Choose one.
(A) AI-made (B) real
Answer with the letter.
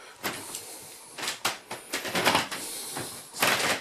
B